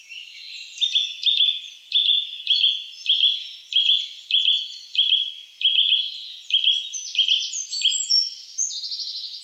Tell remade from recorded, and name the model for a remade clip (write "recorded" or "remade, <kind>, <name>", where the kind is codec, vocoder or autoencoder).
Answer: recorded